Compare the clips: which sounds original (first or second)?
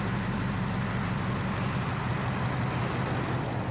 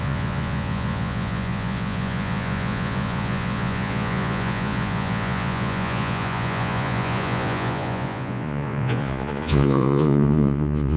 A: first